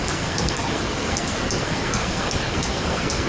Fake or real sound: fake